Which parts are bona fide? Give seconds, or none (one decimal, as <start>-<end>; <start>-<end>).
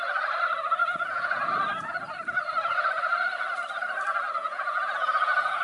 0.0-0.8; 1.5-4.4